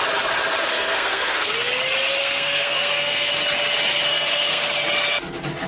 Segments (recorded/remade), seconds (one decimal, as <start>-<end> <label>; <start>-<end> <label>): 0.0-0.7 recorded; 0.7-1.5 remade; 1.5-2.2 recorded; 2.2-3.3 remade; 3.3-4.1 recorded; 4.1-4.6 remade; 4.6-5.7 recorded